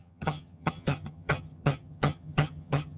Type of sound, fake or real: fake